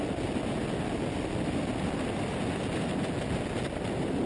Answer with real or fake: real